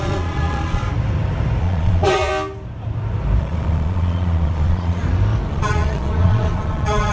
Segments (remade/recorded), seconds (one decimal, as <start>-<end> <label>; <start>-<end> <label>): 0.0-0.8 remade; 0.8-1.6 recorded; 1.6-2.3 remade; 2.3-3.4 recorded; 3.4-5.0 remade; 5.0-5.5 recorded; 5.5-7.1 remade